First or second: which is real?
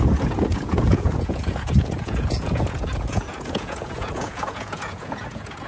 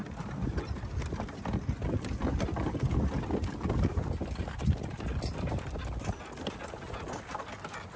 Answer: second